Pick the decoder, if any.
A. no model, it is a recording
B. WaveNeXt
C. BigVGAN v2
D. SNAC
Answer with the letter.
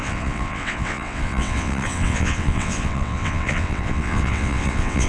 B